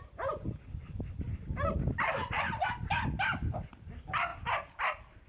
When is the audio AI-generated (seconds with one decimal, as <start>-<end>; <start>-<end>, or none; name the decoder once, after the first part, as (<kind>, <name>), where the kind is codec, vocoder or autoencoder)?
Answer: none